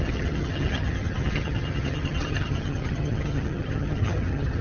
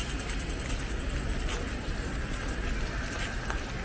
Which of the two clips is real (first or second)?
second